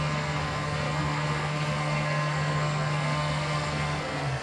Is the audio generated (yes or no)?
yes